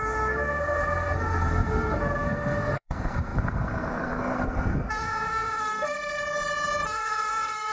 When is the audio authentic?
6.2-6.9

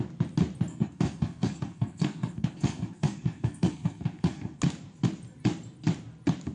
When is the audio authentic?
0.0-0.7; 4.6-6.5

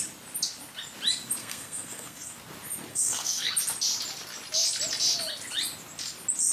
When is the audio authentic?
0.0-1.4; 2.3-2.9; 3.5-6.5

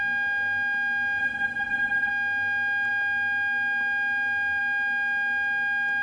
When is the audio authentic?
0.0-1.2; 2.1-6.0

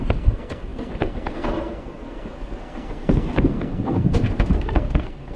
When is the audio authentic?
none